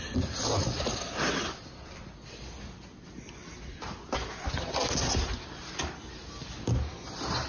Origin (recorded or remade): recorded